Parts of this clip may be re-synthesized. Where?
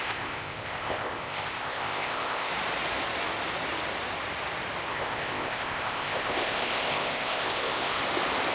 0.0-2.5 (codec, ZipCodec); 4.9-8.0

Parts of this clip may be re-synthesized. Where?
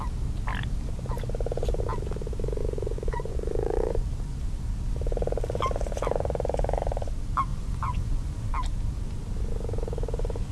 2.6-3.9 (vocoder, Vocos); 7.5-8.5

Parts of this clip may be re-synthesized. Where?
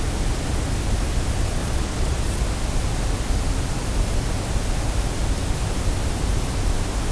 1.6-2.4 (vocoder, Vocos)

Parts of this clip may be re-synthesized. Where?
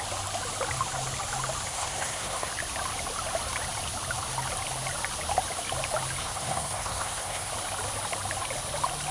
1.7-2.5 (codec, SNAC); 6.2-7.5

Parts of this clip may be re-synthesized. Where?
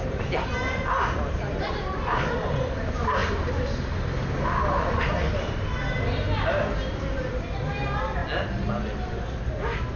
none